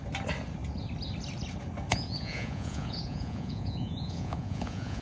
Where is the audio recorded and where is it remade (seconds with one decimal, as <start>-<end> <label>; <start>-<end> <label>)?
0.0-1.9 recorded; 1.9-5.0 remade